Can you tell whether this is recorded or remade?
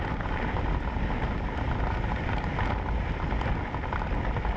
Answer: recorded